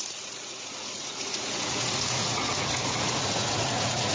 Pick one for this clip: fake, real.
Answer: fake